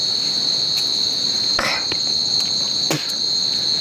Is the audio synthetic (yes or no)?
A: no